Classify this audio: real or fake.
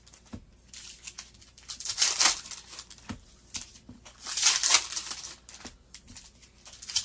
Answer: real